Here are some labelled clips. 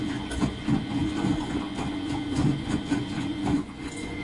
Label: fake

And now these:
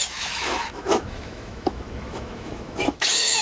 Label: fake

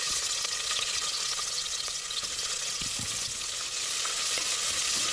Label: fake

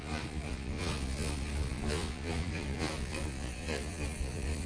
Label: fake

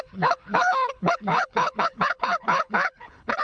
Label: fake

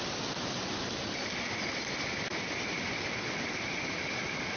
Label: real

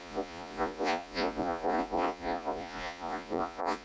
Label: fake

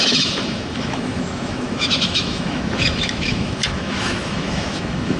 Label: fake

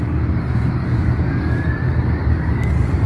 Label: fake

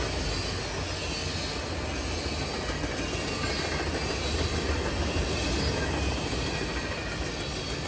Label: real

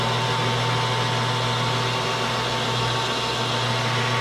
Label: real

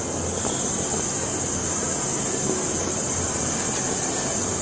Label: real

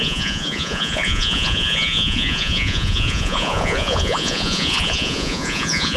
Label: fake